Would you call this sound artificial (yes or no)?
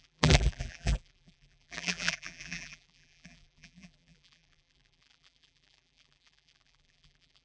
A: yes